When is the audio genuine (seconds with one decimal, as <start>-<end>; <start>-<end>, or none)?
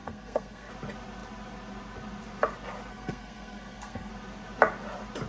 0.7-2.9; 4.1-5.3